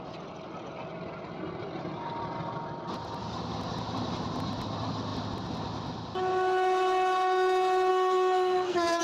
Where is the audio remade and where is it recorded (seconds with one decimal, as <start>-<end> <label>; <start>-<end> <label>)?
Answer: 0.0-7.9 recorded; 7.9-9.0 remade

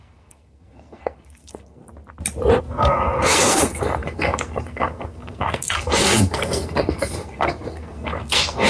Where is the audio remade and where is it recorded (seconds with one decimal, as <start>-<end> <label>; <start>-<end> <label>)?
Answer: 0.0-1.8 remade; 1.8-2.6 recorded; 2.6-8.7 remade

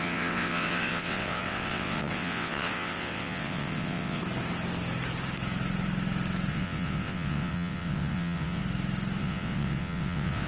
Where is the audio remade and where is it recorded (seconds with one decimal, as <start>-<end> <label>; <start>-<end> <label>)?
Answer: 0.0-4.2 remade; 4.2-6.5 recorded; 6.5-8.6 remade; 8.6-9.2 recorded; 9.2-10.5 remade

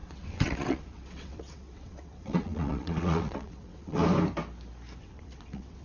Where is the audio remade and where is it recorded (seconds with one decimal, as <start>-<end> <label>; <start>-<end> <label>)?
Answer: 0.0-4.0 remade; 4.0-5.0 recorded; 5.0-5.8 remade

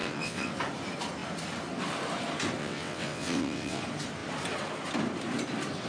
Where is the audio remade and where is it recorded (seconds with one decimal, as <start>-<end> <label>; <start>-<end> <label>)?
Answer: 0.0-0.5 remade; 0.5-2.6 recorded; 2.6-3.8 remade; 3.8-5.9 recorded

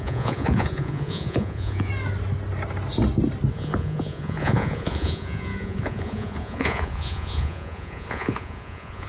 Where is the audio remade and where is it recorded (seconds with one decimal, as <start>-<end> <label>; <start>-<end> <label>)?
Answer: 0.0-1.9 remade; 1.9-3.5 recorded; 3.5-9.1 remade

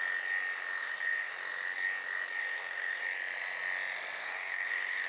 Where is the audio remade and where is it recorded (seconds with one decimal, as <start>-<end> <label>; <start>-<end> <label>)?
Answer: 0.0-0.8 recorded; 0.8-1.3 remade; 1.3-2.4 recorded; 2.4-3.0 remade; 3.0-4.2 recorded; 4.2-5.1 remade

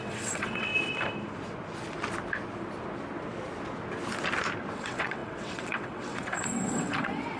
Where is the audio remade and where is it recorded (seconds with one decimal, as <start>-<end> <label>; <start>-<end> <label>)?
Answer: 0.0-0.7 remade; 0.7-4.7 recorded; 4.7-7.4 remade